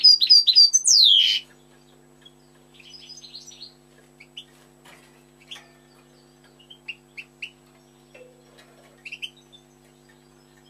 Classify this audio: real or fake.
real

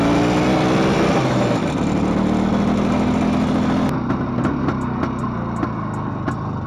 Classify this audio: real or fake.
real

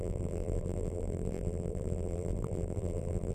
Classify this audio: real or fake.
fake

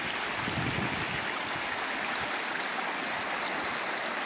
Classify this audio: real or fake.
real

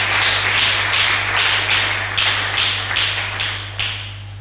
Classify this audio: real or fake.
real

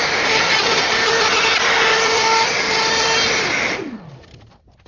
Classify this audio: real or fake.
real